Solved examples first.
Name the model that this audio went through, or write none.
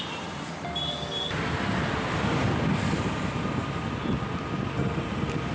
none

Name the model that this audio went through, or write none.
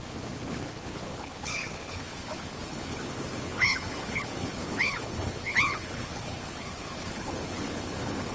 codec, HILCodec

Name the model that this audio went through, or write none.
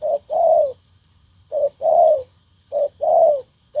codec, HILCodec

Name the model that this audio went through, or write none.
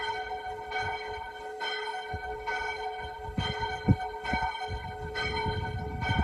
codec, HILCodec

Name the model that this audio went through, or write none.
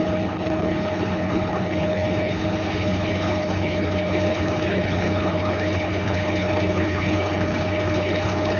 codec, HILCodec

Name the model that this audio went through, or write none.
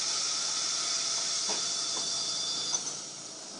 none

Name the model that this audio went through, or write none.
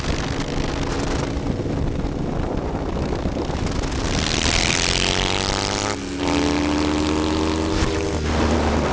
none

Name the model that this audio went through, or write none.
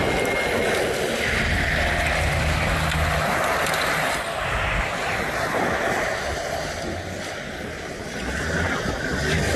none